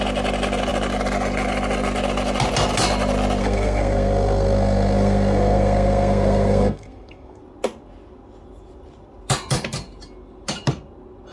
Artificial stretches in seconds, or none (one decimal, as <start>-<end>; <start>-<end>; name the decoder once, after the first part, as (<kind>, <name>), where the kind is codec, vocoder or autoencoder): 3.4-7.4 (codec, SNAC)